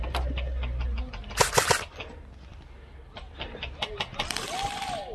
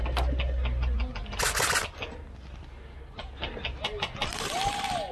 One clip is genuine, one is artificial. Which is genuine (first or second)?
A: second